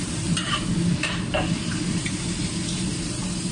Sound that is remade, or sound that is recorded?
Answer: remade